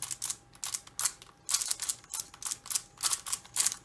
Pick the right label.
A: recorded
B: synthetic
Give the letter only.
A